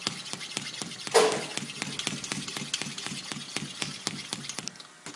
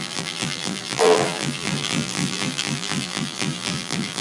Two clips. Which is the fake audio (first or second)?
second